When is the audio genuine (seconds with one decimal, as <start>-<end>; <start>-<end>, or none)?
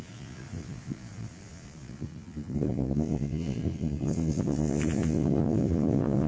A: none